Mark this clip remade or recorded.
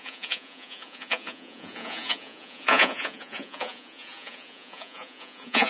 remade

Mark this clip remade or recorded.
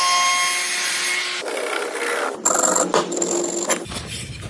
recorded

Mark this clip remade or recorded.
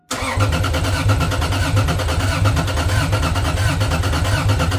recorded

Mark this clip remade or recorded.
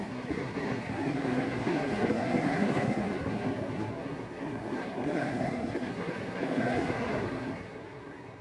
remade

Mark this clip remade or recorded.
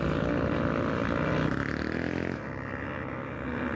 recorded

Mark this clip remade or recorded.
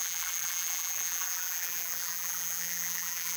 remade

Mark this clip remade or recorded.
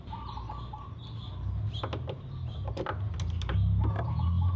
recorded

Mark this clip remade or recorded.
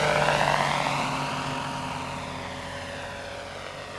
recorded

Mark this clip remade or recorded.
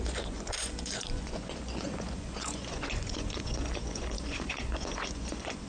remade